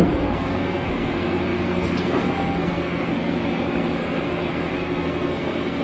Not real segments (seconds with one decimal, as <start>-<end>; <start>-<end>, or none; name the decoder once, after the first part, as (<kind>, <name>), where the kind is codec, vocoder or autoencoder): 0.0-5.8 (codec, SNAC)